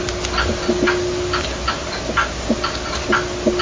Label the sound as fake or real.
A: real